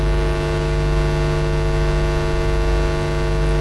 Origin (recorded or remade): recorded